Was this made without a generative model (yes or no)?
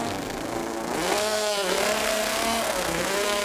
no